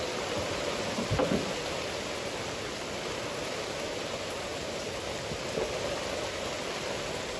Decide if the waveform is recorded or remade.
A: recorded